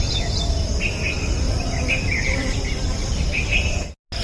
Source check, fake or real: real